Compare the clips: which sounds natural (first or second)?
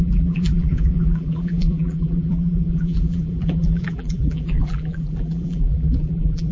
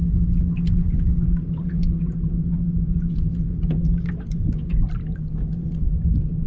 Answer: second